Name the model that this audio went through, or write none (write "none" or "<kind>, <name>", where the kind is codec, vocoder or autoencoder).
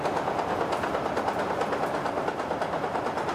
none